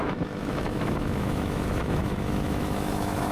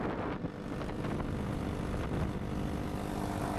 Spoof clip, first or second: first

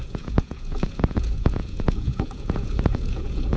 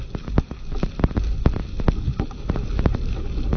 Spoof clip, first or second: first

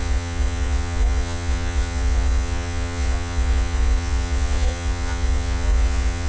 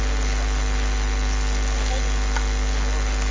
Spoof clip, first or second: first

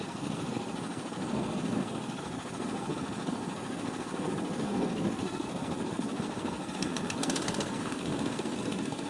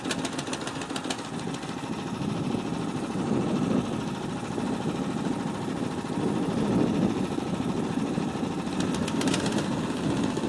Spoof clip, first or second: first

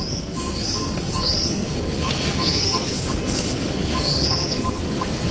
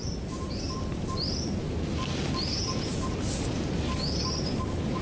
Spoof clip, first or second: first